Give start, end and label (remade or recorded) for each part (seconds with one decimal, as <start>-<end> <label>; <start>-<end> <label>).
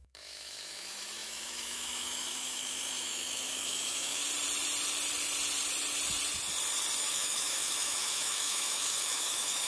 0.0-4.2 remade; 4.2-7.0 recorded; 7.0-9.7 remade